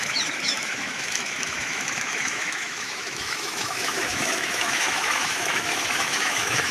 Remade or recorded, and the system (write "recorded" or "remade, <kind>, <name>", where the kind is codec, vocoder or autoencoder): remade, autoencoder, DAC-VAE